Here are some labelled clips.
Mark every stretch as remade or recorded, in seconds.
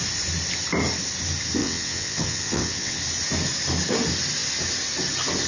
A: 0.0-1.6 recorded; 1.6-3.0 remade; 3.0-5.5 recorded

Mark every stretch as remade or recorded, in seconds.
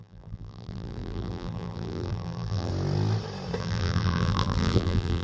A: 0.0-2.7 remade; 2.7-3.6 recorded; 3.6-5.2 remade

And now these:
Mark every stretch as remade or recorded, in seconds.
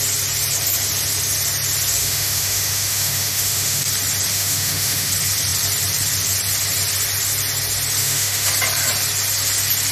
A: 0.0-2.0 recorded; 2.0-3.8 remade; 3.8-4.3 recorded; 4.3-5.1 remade; 5.1-8.0 recorded; 8.0-8.5 remade; 8.5-9.9 recorded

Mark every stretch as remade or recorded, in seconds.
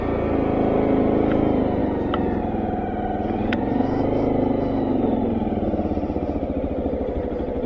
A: 0.0-7.7 recorded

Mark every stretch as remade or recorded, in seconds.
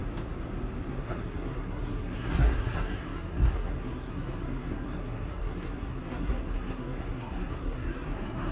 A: 0.0-0.9 recorded; 0.9-8.5 remade